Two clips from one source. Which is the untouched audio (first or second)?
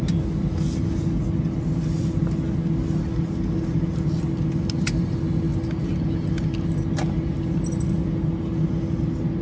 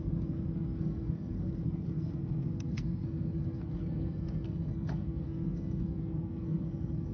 first